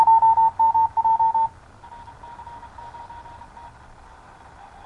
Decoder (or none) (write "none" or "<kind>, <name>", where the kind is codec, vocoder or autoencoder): none